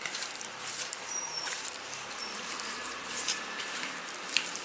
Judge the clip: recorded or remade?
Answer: remade